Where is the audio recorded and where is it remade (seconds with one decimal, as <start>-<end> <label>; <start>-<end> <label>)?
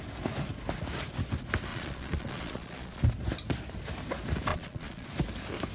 0.0-1.7 recorded; 1.7-3.0 remade; 3.0-4.5 recorded; 4.5-5.1 remade; 5.1-5.7 recorded